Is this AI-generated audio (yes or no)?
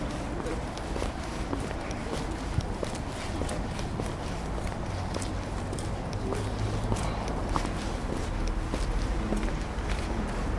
no